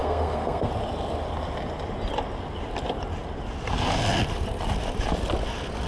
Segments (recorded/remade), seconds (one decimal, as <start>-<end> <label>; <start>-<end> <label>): 0.0-0.7 remade; 0.7-5.9 recorded